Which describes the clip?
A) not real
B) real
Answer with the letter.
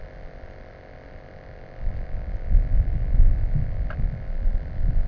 B